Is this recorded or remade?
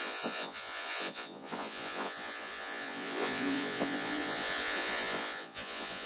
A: remade